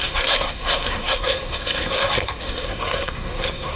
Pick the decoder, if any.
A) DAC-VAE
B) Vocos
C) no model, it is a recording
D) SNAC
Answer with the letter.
D